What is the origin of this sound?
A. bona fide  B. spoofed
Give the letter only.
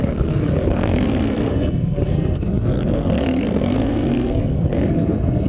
B